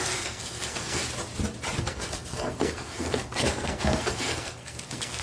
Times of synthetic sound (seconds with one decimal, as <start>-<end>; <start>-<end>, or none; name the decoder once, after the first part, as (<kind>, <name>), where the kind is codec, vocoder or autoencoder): 0.0-1.0 (codec, SNAC); 1.8-5.2